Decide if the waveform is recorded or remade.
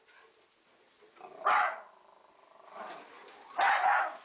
recorded